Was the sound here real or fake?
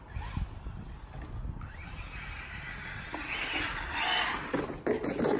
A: real